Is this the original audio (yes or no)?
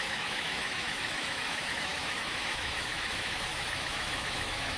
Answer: no